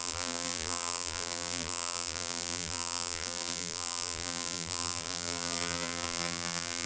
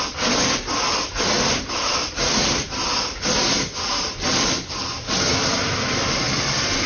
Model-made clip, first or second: first